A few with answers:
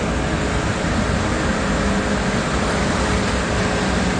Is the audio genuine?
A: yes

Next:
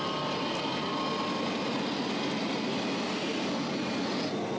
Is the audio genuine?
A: yes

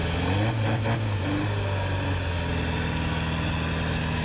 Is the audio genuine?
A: yes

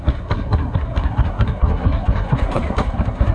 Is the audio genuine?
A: no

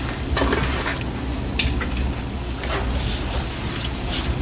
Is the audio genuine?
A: yes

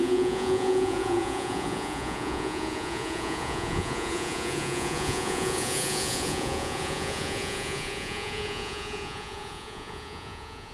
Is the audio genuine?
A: no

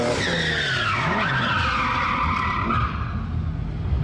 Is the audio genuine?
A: yes